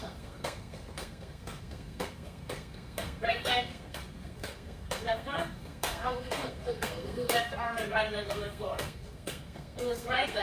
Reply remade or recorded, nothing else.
remade